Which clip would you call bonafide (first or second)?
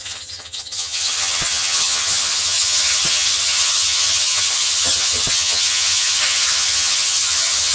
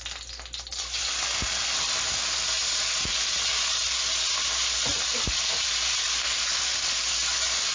second